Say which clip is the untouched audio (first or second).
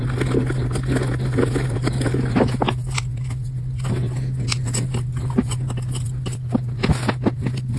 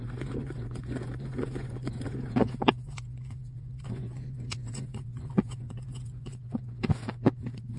first